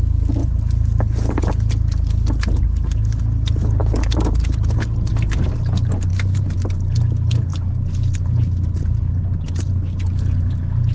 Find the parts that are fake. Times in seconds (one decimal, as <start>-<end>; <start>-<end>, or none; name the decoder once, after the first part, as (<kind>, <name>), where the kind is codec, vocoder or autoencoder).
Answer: 0.4-1.5 (vocoder, BigVGAN v2); 3.8-5.1; 6.1-6.7